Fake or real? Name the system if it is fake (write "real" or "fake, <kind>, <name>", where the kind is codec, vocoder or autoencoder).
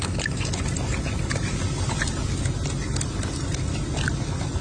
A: real